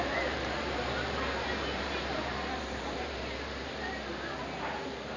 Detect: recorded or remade remade